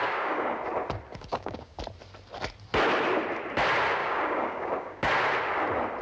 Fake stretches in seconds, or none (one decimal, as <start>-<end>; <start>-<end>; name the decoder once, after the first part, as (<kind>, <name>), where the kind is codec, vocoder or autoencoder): 0.0-0.6 (codec, DAC); 1.1-1.8; 4.0-5.1